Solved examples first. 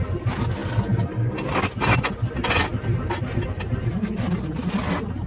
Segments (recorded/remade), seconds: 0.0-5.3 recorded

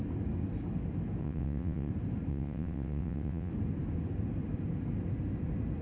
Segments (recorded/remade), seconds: 0.0-1.2 recorded; 1.2-1.9 remade; 1.9-2.3 recorded; 2.3-3.5 remade; 3.5-5.8 recorded

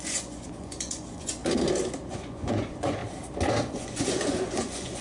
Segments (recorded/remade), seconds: 0.0-1.4 remade; 1.4-2.1 recorded; 2.1-3.0 remade; 3.0-3.6 recorded; 3.6-5.0 remade